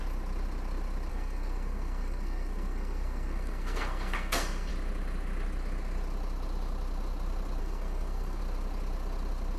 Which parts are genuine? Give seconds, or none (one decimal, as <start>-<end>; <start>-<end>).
0.0-1.1; 4.7-7.6; 8.4-9.6